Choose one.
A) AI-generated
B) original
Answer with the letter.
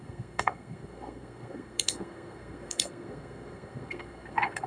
A